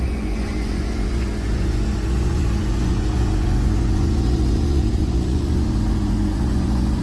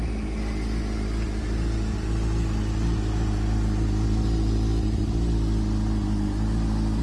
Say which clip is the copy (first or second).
first